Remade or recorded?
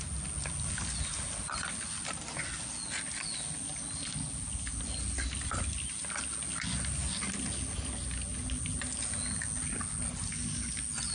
recorded